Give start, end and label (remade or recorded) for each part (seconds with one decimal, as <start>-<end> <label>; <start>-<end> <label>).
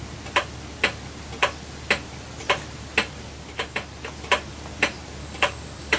0.0-5.2 recorded; 5.2-6.0 remade